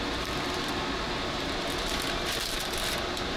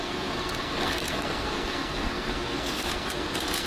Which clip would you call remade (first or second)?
second